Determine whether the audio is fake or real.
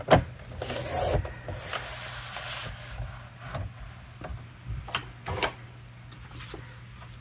real